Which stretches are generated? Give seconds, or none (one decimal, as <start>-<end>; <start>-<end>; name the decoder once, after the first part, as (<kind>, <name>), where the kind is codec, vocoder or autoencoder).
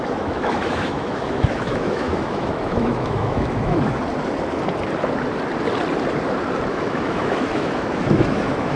0.0-4.0 (autoencoder, DAC-VAE); 6.7-8.8